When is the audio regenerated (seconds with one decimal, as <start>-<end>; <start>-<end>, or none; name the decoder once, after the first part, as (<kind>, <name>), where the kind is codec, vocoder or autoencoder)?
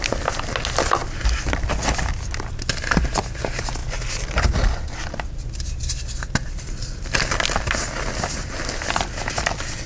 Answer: none